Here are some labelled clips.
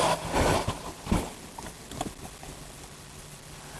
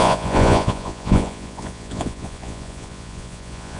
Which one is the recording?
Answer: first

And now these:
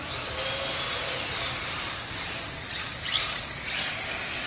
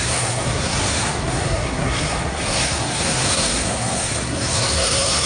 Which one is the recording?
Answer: first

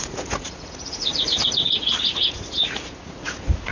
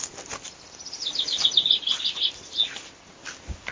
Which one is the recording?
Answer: second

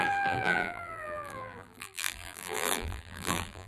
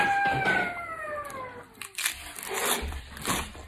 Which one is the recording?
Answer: second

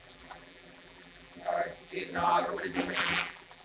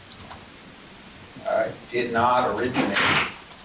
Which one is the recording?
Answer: second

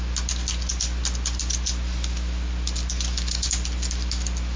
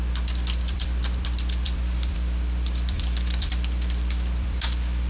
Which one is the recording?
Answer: first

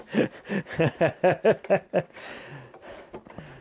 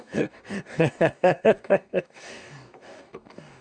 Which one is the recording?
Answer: first